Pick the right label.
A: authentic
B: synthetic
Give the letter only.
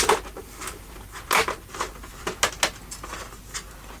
A